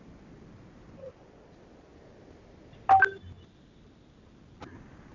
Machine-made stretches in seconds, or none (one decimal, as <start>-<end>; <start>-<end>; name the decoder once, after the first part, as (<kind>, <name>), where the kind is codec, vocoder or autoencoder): none